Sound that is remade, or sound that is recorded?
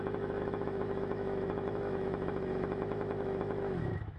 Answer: remade